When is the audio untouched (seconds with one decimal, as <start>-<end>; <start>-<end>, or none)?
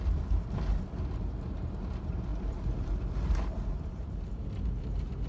0.0-2.3; 4.6-5.3